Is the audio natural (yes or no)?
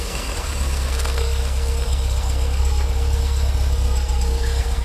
no